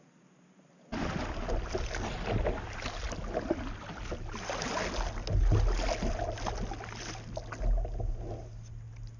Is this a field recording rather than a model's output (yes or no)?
yes